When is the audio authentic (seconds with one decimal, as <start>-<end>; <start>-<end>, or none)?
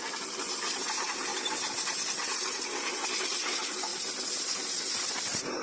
1.3-2.9; 3.9-4.5